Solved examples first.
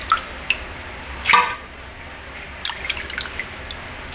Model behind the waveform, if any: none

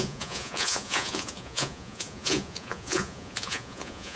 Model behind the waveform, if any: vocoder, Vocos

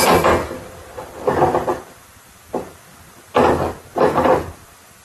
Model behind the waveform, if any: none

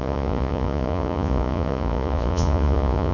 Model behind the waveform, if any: vocoder, Vocos